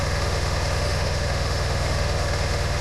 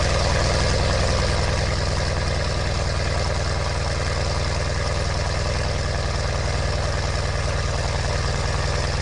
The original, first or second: second